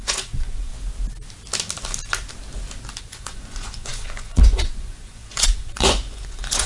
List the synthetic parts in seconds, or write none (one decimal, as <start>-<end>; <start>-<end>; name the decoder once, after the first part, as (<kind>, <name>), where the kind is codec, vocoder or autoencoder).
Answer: 0.0-0.7 (vocoder, Vocos); 3.0-6.7